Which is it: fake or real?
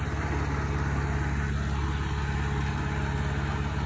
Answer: real